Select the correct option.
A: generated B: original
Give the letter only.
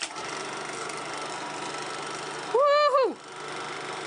B